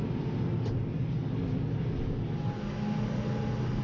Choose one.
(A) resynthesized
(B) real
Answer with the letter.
B